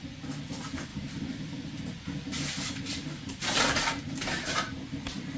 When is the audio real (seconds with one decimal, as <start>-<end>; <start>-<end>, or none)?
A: 0.0-0.9; 3.6-5.4